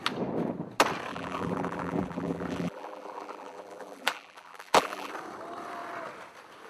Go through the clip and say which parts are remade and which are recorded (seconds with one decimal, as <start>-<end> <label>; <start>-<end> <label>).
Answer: 0.0-1.1 recorded; 1.1-5.1 remade; 5.1-6.7 recorded